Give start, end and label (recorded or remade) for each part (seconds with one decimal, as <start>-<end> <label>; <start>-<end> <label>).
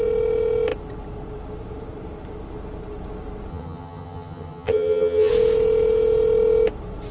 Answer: 0.0-3.5 recorded; 3.5-5.3 remade; 5.3-7.1 recorded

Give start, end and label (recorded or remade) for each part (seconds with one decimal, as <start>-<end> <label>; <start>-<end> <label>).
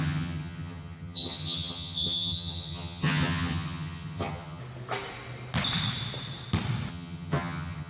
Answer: 0.0-4.6 remade; 4.6-6.9 recorded; 6.9-7.9 remade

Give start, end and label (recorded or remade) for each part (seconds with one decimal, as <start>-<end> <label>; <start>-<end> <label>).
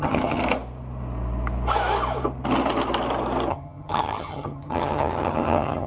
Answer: 0.0-0.4 remade; 0.4-3.5 recorded; 3.5-5.9 remade